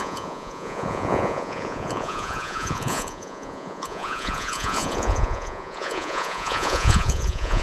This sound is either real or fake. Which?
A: fake